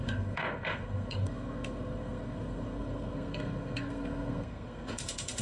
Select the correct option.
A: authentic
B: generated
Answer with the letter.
B